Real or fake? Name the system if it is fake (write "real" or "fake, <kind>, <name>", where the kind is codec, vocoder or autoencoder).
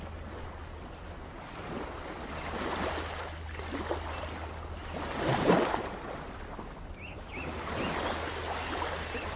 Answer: real